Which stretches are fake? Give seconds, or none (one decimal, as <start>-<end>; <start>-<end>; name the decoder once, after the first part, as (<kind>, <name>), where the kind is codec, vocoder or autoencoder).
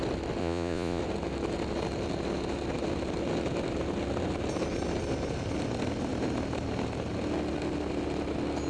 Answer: 0.4-1.0 (vocoder, Vocos)